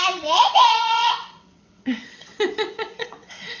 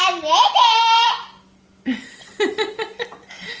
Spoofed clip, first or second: first